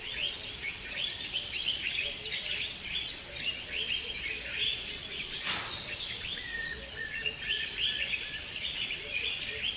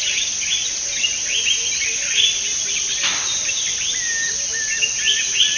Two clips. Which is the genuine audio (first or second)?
second